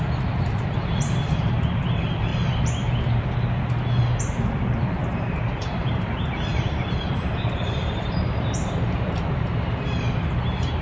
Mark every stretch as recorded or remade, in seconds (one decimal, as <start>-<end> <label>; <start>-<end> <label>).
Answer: 0.0-2.3 remade; 2.3-5.0 recorded; 5.0-10.8 remade